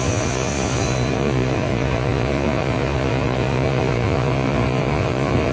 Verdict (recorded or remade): remade